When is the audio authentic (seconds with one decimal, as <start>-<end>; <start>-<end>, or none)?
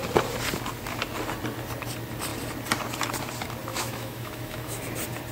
0.0-3.7; 4.8-5.3